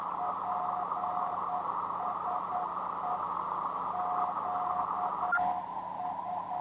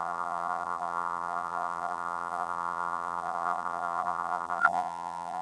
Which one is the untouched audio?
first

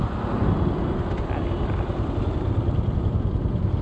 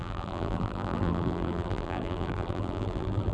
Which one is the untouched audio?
first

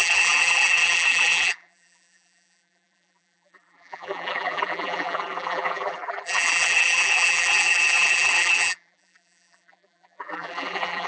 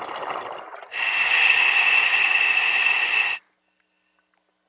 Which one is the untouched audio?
second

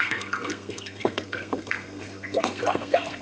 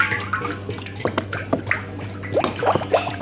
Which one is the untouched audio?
second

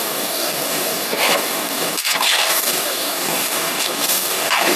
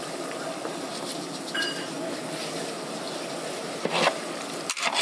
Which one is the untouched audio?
second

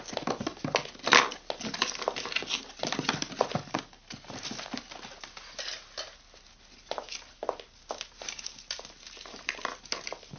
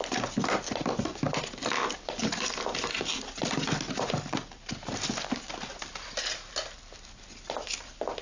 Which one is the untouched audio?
first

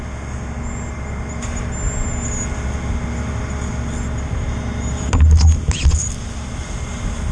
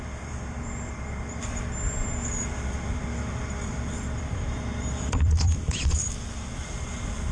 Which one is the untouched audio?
first